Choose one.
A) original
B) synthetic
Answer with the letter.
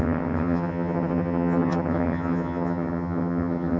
B